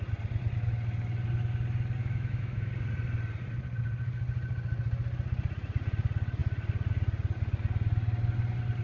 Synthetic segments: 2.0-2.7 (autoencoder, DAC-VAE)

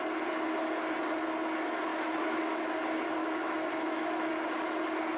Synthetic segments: 1.9-2.7 (autoencoder, DAC-VAE); 3.2-4.3

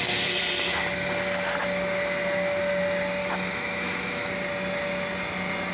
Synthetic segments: 3.2-4.3 (autoencoder, DAC-VAE)

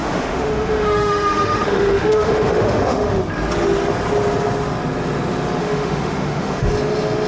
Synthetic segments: 0.0-3.2 (autoencoder, DAC-VAE); 5.6-6.7